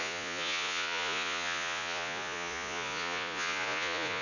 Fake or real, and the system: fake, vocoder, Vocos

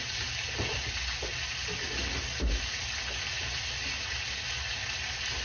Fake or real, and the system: real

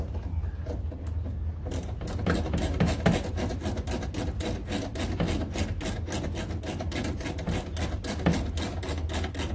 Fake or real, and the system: real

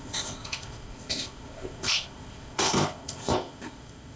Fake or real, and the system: fake, codec, ZipCodec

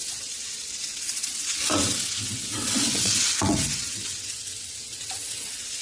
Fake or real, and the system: fake, vocoder, WaveNeXt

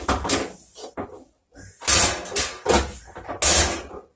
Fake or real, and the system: real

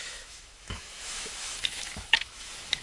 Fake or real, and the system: fake, autoencoder, DAC-VAE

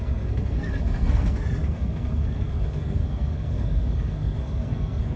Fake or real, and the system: fake, codec, SNAC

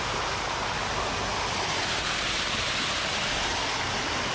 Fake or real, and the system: real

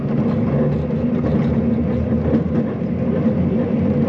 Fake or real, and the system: real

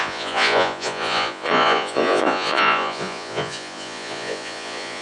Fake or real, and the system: fake, vocoder, Vocos